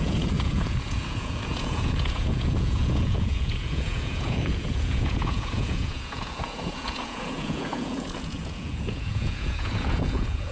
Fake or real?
fake